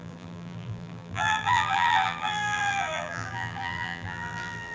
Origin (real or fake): fake